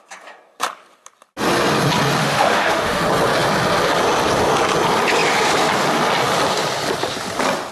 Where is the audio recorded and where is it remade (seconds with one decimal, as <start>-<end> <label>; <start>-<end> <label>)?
0.0-2.2 recorded; 2.2-3.0 remade; 3.0-7.7 recorded